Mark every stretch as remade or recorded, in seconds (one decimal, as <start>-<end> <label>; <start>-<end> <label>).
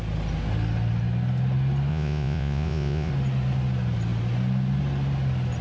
0.0-1.9 recorded; 1.9-3.1 remade; 3.1-5.6 recorded